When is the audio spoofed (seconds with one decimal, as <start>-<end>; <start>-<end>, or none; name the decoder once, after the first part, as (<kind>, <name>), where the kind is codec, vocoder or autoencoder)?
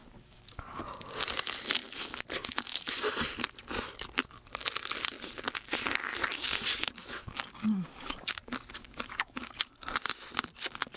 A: 0.0-0.8 (codec, DAC); 6.3-9.6